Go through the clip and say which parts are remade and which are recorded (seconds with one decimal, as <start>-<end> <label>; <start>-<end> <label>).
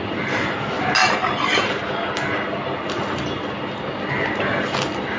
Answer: 0.0-5.2 recorded